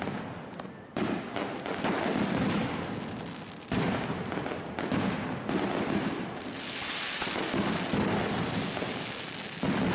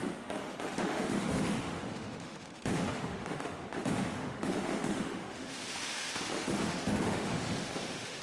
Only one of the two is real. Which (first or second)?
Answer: first